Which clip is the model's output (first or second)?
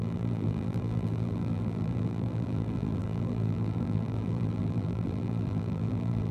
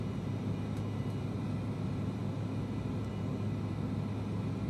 first